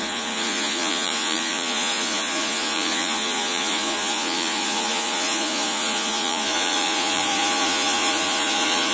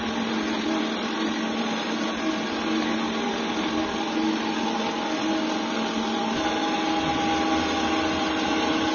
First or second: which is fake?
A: first